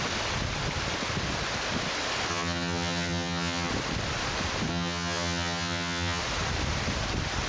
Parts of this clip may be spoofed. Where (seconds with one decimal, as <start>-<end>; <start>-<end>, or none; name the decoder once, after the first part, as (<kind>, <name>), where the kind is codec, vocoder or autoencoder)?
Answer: 2.3-3.7 (vocoder, HiFi-GAN); 4.7-6.2